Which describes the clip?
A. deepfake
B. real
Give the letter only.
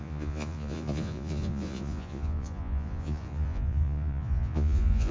A